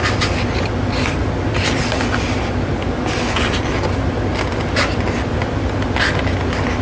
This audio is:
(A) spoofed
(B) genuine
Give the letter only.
B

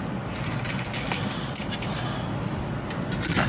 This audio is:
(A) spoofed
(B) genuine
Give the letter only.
B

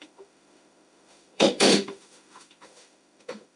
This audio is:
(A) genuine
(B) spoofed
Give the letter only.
B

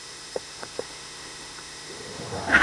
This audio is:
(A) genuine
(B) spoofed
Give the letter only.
B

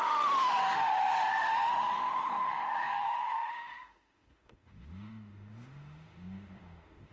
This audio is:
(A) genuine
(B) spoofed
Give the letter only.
B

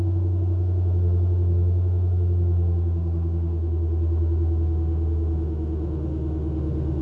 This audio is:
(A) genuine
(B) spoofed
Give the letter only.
B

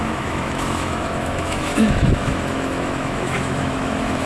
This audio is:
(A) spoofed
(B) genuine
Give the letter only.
A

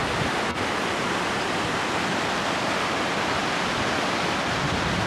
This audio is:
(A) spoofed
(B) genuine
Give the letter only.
B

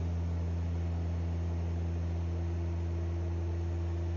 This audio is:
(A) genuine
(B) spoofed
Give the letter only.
A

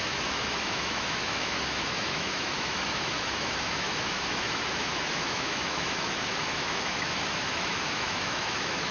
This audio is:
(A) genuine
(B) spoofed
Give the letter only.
B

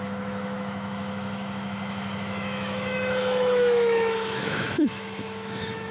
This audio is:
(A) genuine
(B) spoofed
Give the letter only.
B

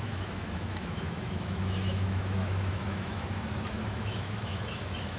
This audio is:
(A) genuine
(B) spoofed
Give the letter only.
B